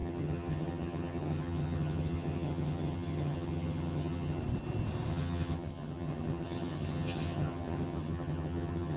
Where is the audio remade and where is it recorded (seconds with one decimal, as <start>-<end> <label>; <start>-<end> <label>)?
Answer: 0.0-4.4 remade; 4.4-5.1 recorded; 5.1-9.0 remade